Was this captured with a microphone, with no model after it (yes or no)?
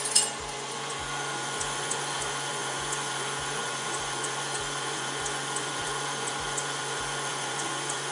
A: no